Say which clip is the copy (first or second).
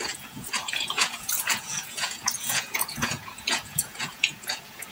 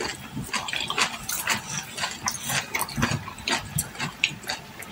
first